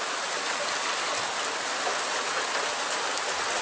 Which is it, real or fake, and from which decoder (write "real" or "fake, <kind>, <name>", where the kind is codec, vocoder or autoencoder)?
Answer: real